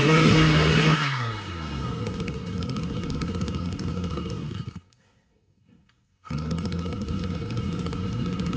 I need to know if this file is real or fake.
fake